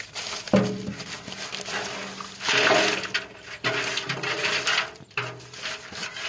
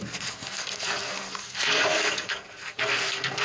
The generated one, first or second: second